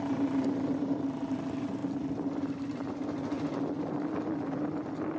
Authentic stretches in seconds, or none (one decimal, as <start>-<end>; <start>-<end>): 0.0-5.2